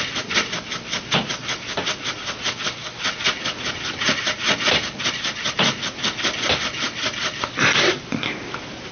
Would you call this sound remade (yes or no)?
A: no